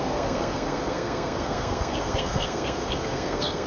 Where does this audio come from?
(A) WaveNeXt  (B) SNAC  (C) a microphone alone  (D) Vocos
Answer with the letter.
B